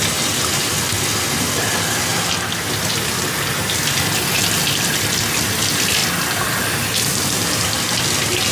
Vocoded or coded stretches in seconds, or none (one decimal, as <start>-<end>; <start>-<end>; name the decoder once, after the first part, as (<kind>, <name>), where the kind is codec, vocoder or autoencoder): 6.0-6.5 (vocoder, BigVGAN v2)